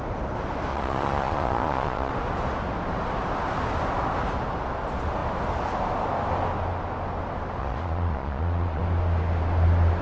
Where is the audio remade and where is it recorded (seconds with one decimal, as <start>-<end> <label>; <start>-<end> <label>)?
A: 0.0-0.7 recorded; 0.7-2.1 remade; 2.1-7.6 recorded; 7.6-8.8 remade; 8.8-10.0 recorded